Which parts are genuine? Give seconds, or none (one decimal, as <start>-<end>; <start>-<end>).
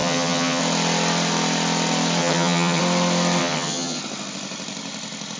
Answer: 0.6-2.2; 2.8-3.4; 4.0-5.4